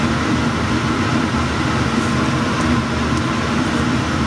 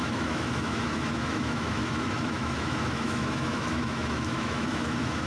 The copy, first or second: second